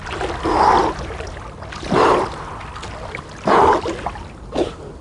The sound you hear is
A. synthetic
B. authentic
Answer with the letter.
B